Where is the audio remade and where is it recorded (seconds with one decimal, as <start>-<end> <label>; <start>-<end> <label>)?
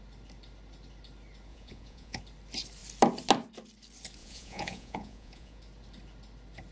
0.0-1.5 recorded; 1.5-2.2 remade; 2.2-4.2 recorded; 4.2-5.6 remade; 5.6-6.7 recorded